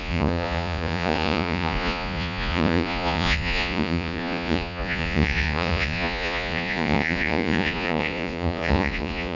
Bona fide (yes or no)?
no